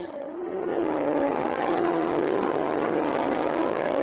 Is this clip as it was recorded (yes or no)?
no